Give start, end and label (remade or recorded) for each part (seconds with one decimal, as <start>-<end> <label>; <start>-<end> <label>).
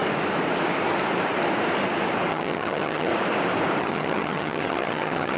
0.0-2.3 recorded; 2.3-3.1 remade; 3.1-3.8 recorded; 3.8-5.4 remade